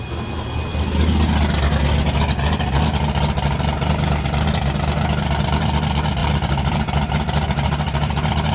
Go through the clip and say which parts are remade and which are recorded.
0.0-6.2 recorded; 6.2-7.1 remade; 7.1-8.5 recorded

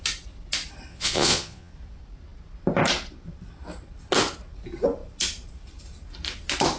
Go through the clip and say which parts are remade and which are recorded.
0.0-0.9 recorded; 0.9-1.7 remade; 1.7-6.8 recorded

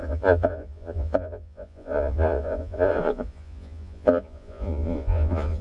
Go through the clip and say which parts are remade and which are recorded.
0.0-5.6 remade

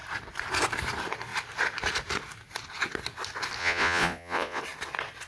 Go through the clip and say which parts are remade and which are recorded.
0.0-3.6 recorded; 3.6-4.6 remade; 4.6-5.3 recorded